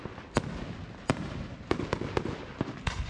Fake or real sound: real